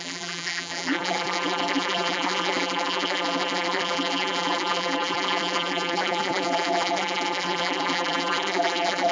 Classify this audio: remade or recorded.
remade